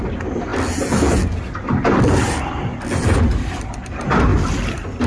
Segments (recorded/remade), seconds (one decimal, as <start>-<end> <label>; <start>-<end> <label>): 0.0-5.1 recorded